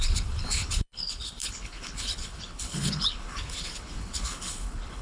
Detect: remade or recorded remade